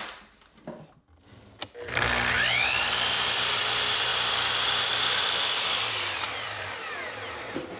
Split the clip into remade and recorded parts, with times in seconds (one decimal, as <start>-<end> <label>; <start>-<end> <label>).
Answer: 0.0-7.8 recorded